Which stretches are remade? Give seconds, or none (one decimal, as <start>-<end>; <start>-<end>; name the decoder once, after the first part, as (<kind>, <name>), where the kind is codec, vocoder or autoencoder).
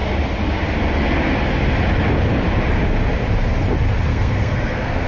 4.1-5.1 (codec, SNAC)